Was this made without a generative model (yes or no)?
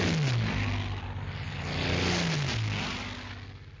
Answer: yes